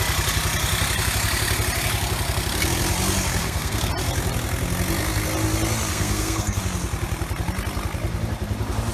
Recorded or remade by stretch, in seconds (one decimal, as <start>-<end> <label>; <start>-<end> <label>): 0.0-3.4 recorded; 3.4-3.9 remade; 3.9-5.9 recorded; 5.9-6.6 remade; 6.6-8.9 recorded